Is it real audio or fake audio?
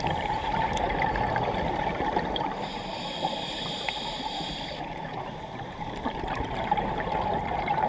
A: fake